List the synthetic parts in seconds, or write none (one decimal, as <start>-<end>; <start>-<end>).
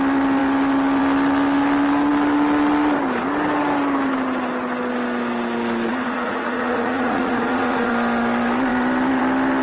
5.9-7.9